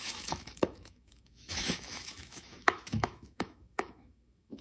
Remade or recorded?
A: remade